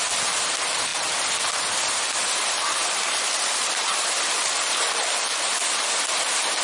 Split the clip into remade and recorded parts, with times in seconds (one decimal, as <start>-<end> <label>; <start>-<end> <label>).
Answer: 0.0-0.9 recorded; 0.9-4.8 remade; 4.8-6.6 recorded